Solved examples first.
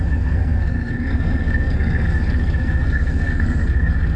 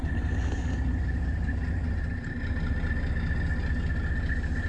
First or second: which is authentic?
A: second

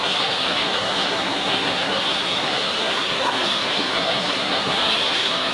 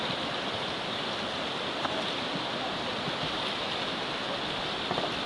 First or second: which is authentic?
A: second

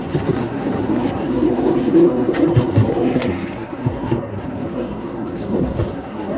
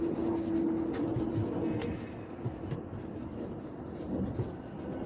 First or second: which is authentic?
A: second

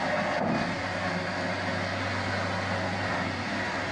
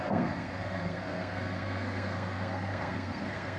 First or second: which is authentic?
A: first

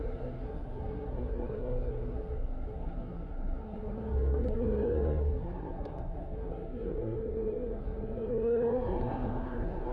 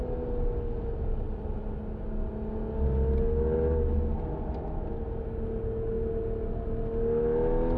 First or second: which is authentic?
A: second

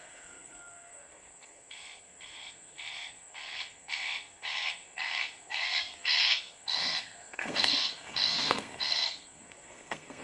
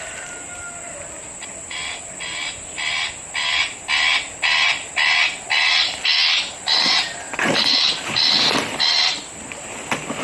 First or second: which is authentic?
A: second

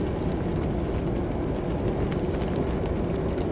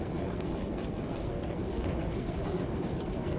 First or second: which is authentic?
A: first